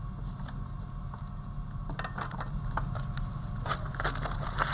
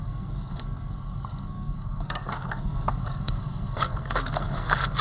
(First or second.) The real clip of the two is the first